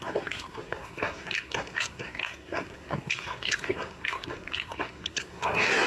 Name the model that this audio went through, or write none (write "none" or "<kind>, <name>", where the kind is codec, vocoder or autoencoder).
codec, SNAC